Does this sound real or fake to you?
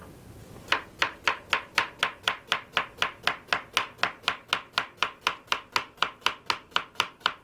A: real